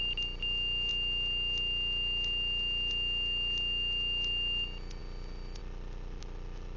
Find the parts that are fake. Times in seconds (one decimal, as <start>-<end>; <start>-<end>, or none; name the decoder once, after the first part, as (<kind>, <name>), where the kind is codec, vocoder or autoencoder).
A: none